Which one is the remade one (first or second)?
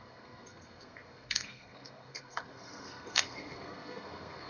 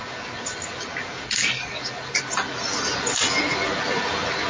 first